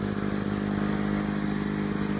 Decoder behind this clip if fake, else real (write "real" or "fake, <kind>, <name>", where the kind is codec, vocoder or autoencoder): real